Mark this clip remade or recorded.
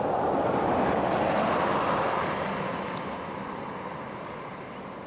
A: recorded